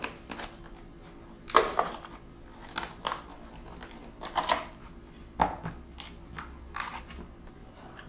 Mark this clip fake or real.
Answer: real